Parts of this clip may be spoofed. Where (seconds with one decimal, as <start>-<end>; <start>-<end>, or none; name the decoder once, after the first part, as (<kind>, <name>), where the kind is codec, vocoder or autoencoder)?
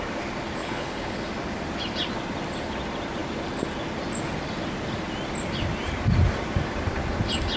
0.6-1.3 (codec, HILCodec)